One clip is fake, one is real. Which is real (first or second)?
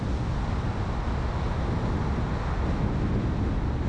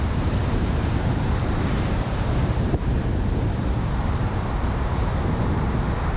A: first